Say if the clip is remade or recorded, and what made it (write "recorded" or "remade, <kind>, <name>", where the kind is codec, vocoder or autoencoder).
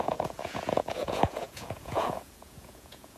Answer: remade, vocoder, Vocos